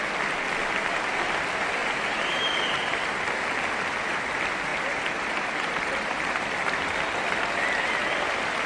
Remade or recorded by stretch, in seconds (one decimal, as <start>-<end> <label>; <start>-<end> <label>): 0.0-1.8 recorded; 1.8-3.1 remade; 3.1-4.7 recorded; 4.7-6.3 remade; 6.3-8.7 recorded